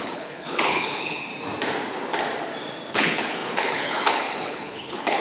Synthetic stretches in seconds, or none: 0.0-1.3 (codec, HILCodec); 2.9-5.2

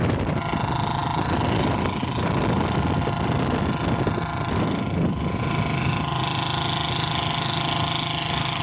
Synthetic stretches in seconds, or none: none

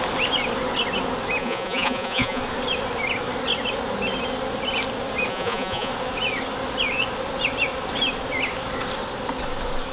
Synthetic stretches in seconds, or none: 1.4-2.4 (vocoder, Vocos); 5.3-5.9

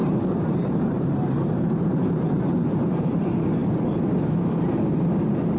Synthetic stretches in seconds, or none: 0.0-3.2 (vocoder, BigVGAN v2)

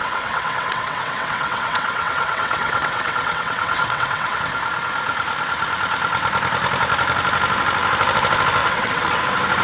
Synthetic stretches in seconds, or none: 0.0-4.4 (vocoder, WaveNeXt); 8.6-9.2

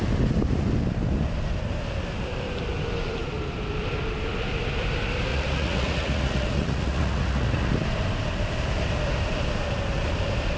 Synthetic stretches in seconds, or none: 5.3-7.7 (vocoder, Vocos)

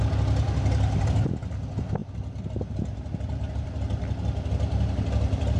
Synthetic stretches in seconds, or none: none

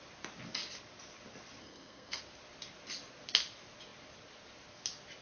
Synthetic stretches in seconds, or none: 1.6-2.2 (codec, SNAC)